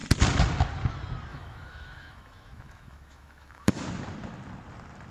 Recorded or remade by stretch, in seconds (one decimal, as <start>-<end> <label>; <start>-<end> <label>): 0.0-1.3 recorded; 1.3-3.8 remade; 3.8-5.1 recorded